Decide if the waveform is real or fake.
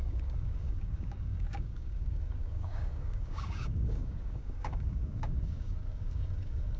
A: fake